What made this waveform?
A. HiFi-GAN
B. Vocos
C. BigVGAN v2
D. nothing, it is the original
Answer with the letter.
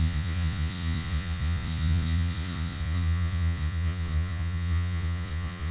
B